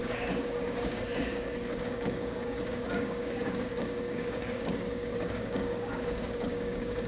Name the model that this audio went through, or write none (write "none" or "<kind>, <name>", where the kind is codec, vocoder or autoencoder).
codec, DAC